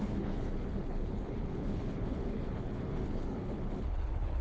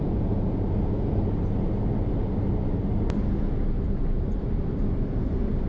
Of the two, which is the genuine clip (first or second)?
second